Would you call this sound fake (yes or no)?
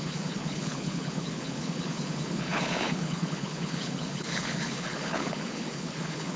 yes